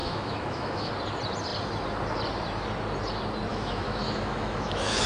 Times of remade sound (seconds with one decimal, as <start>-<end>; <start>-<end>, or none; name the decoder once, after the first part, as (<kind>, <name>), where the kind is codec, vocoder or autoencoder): 0.0-0.9 (autoencoder, DAC-VAE); 3.5-5.1